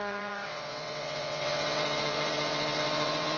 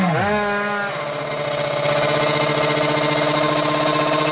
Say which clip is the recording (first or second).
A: second